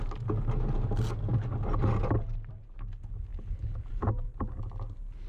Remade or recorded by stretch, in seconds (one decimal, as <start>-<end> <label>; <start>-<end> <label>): 0.0-5.3 recorded